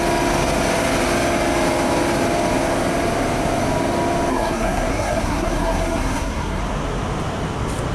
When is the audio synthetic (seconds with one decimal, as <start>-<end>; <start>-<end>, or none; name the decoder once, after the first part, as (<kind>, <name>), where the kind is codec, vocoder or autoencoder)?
4.3-6.6 (codec, SNAC)